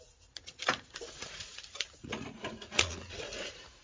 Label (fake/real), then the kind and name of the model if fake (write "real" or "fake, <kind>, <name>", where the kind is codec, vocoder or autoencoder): fake, vocoder, Vocos